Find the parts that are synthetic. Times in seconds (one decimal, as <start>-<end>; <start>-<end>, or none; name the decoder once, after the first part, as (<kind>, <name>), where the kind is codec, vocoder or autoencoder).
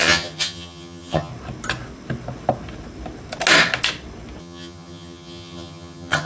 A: 0.0-1.3 (vocoder, HiFi-GAN); 4.4-6.3